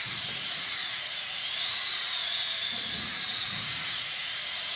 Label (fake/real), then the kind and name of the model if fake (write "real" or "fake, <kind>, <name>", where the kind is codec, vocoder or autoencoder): fake, vocoder, Vocos